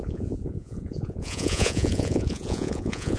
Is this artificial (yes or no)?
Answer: yes